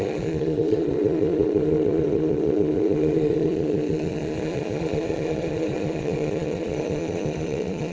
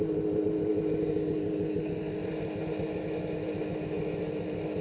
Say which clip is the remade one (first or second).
first